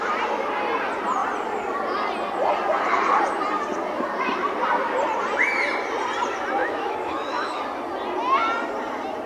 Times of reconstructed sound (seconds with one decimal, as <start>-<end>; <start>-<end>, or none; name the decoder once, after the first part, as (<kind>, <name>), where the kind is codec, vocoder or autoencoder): 6.6-7.6 (autoencoder, DAC-VAE)